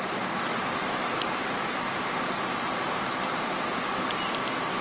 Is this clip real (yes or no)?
yes